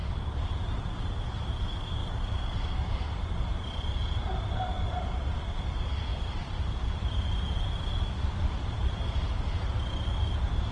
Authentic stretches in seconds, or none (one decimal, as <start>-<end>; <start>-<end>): 0.5-2.0; 5.3-6.1; 8.9-10.7